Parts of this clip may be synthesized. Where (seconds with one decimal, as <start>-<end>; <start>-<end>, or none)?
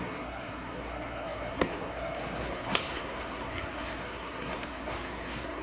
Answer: 0.0-5.6